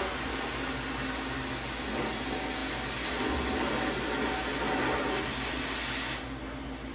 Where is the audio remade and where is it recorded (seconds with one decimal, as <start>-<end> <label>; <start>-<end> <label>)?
0.0-6.9 recorded